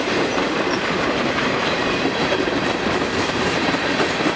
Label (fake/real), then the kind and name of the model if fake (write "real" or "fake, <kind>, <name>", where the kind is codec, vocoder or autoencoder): fake, vocoder, BigVGAN v2